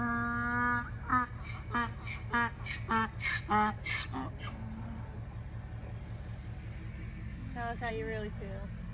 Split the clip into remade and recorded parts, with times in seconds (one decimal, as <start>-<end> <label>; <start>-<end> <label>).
0.0-7.3 recorded; 7.3-7.9 remade; 7.9-8.9 recorded